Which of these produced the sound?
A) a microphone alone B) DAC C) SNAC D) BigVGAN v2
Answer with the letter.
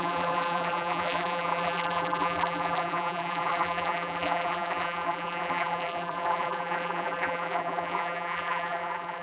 D